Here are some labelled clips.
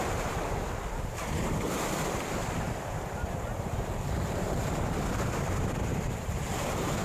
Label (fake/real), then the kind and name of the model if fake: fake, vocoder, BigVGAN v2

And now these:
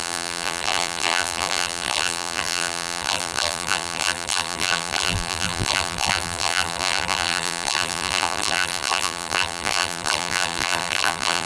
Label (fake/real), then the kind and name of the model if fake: fake, vocoder, BigVGAN v2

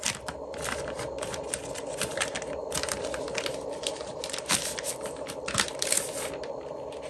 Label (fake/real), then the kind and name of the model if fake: real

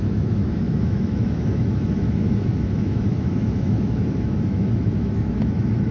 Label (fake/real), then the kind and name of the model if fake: fake, autoencoder, DAC-VAE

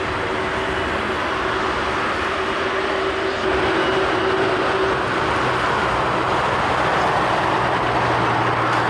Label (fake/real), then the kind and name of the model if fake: real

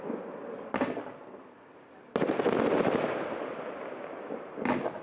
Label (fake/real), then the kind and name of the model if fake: real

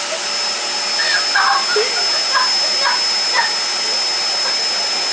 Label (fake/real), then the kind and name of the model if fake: real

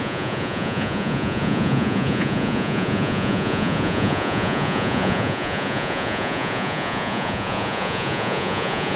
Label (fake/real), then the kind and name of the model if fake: fake, vocoder, Vocos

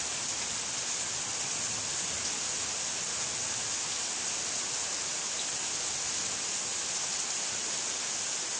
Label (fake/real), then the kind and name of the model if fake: real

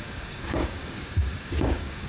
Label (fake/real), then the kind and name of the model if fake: fake, codec, DAC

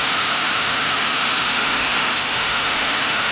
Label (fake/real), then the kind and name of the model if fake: fake, autoencoder, DAC-VAE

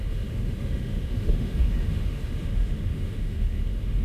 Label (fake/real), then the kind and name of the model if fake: fake, autoencoder, DAC-VAE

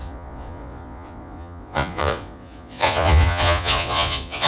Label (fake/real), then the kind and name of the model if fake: fake, vocoder, Vocos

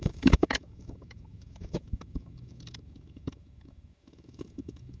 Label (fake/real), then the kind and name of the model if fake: fake, autoencoder, DAC-VAE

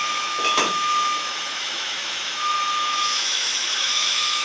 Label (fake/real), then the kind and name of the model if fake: fake, autoencoder, DAC-VAE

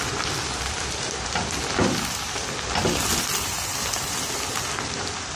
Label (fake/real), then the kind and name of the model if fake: fake, vocoder, BigVGAN v2